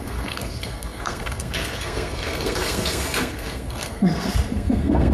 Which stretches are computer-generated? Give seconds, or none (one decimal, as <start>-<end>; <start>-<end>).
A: 0.0-5.1